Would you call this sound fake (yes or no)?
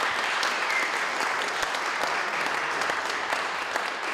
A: no